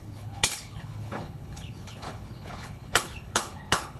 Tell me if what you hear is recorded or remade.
remade